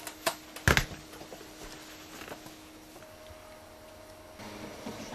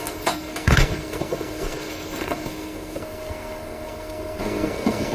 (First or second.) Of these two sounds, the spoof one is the second